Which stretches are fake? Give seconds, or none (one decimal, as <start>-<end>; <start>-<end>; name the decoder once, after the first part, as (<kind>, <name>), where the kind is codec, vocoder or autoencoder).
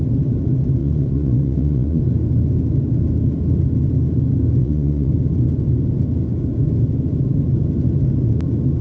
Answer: 0.8-2.0 (vocoder, Vocos); 4.6-5.1